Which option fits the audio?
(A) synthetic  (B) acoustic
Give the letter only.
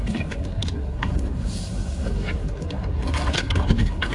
A